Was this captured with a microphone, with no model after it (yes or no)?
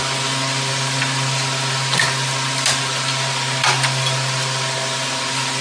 yes